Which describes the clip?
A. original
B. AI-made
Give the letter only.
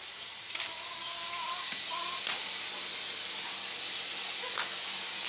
A